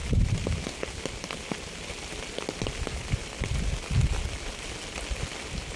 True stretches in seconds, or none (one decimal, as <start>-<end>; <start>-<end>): 0.0-5.8